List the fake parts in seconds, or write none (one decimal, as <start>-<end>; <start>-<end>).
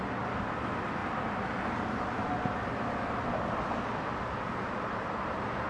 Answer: none